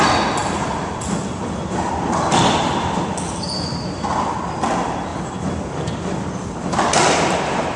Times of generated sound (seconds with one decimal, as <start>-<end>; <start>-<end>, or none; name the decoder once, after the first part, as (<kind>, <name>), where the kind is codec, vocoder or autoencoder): 0.4-4.1 (vocoder, BigVGAN v2); 5.1-6.6